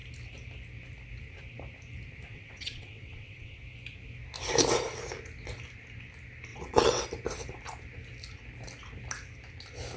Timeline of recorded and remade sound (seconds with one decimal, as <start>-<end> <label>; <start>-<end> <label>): 0.0-2.3 recorded; 2.3-3.6 remade; 3.6-6.5 recorded; 6.5-7.0 remade; 7.0-10.0 recorded